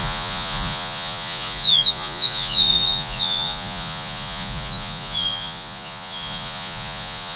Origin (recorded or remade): remade